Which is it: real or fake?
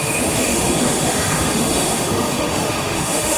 fake